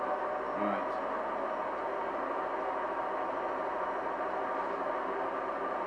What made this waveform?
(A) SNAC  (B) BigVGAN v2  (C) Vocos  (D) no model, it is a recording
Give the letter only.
D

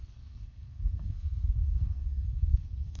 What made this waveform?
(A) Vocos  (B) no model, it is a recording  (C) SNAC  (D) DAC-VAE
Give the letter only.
C